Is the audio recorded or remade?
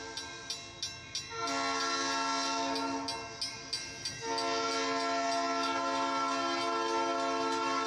recorded